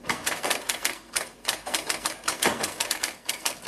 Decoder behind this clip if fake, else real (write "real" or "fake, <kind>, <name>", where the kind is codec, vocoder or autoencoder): fake, codec, SNAC